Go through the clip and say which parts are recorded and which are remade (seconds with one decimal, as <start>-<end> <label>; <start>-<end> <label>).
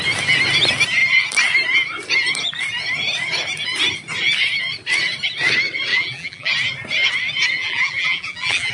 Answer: 0.0-5.9 recorded; 5.9-6.5 remade; 6.5-7.6 recorded; 7.6-8.7 remade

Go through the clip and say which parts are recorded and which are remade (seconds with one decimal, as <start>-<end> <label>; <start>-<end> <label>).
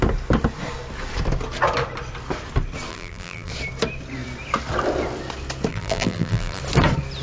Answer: 0.0-2.9 recorded; 2.9-3.5 remade; 3.5-5.7 recorded; 5.7-6.6 remade; 6.6-7.2 recorded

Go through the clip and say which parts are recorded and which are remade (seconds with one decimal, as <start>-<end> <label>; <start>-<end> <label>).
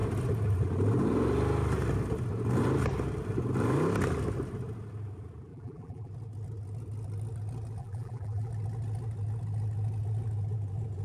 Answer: 0.0-5.5 recorded; 5.5-6.1 remade; 6.1-7.8 recorded; 7.8-8.5 remade; 8.5-11.0 recorded